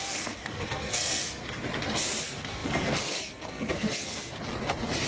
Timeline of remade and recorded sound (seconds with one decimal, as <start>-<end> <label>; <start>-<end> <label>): 0.0-1.4 remade; 1.4-2.2 recorded; 2.2-4.3 remade; 4.3-5.1 recorded